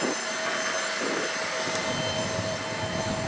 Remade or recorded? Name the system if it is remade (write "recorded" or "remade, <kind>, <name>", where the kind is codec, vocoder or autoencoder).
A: recorded